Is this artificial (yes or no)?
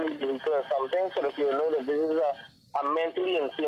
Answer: no